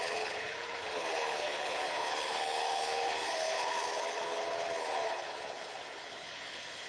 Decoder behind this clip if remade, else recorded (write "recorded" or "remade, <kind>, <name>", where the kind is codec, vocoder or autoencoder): remade, codec, HILCodec